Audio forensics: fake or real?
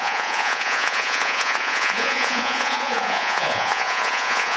fake